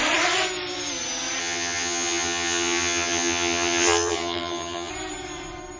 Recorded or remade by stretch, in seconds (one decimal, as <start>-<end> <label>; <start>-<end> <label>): 0.0-1.4 recorded; 1.4-4.9 remade; 4.9-5.8 recorded